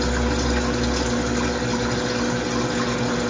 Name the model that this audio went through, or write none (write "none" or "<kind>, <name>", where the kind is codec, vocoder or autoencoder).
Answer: none